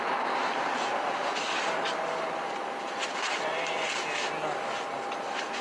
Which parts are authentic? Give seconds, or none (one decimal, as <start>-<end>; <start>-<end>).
0.0-0.4; 3.8-5.6